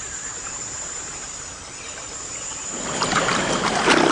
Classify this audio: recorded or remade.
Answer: recorded